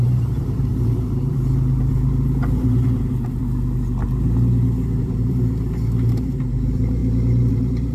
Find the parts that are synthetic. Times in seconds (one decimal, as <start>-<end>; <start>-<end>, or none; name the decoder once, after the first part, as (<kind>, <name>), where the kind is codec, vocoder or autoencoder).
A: 0.0-3.4 (vocoder, BigVGAN v2); 5.0-7.0; 7.5-7.9

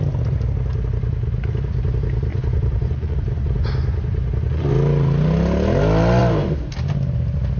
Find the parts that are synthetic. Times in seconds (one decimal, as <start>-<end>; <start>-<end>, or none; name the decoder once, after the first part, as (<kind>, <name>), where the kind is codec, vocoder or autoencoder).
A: 2.3-4.7 (vocoder, Vocos)

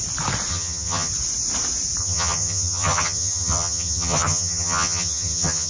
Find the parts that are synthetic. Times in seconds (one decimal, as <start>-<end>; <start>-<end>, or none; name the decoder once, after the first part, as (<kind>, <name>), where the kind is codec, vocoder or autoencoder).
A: 0.5-1.1 (vocoder, HiFi-GAN); 2.0-5.7